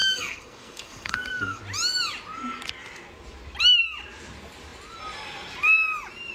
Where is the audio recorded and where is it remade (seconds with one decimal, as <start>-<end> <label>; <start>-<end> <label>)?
0.0-1.6 remade; 1.6-6.3 recorded